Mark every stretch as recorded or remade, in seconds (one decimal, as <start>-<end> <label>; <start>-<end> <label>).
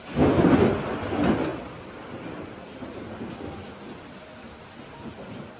0.0-1.5 recorded; 1.5-3.3 remade; 3.3-5.6 recorded